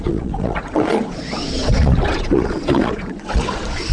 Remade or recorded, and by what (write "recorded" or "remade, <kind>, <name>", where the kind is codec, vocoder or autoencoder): remade, vocoder, Vocos